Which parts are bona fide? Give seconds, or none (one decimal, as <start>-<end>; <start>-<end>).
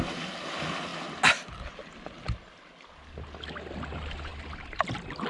0.0-5.3